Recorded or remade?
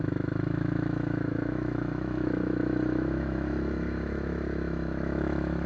remade